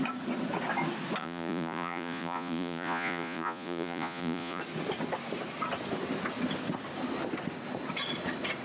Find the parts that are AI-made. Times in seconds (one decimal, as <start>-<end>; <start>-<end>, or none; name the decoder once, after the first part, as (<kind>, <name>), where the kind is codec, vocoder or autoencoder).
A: 1.2-4.6 (vocoder, Vocos)